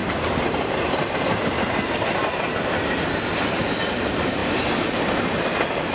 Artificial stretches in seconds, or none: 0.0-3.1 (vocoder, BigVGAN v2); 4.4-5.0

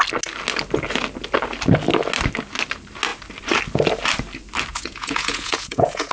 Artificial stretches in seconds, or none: 4.7-6.1 (vocoder, Vocos)

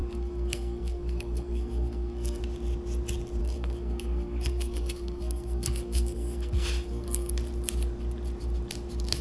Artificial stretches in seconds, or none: 0.0-2.4 (codec, SNAC); 3.4-7.3

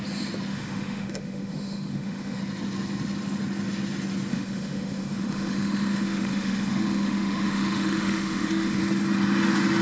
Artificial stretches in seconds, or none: 0.5-2.4 (autoencoder, DAC-VAE); 4.3-8.8